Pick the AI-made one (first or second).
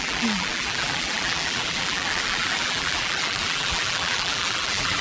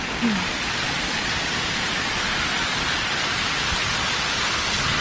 first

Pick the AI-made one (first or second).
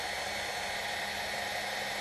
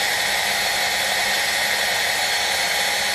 second